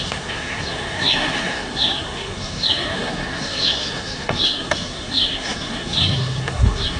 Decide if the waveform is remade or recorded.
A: remade